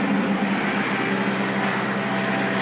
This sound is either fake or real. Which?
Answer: real